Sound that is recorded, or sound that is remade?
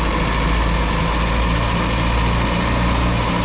recorded